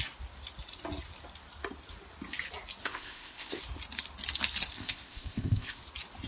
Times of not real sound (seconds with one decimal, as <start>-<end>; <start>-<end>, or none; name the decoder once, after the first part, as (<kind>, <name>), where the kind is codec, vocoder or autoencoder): 2.8-3.6 (codec, ZipCodec); 4.7-5.8